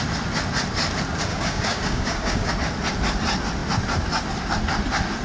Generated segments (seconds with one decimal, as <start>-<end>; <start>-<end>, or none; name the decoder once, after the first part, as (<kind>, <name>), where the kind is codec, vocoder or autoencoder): 1.3-2.5 (codec, DAC)